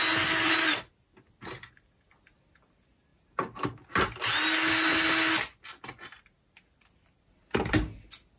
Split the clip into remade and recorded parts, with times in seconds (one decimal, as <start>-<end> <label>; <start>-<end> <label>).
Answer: 0.0-8.4 recorded